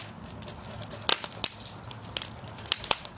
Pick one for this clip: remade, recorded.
recorded